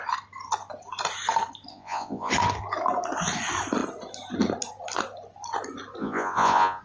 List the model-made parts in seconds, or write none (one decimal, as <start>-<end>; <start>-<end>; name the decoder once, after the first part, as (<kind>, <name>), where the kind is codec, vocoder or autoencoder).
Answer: 1.7-2.3 (vocoder, Vocos); 6.0-6.8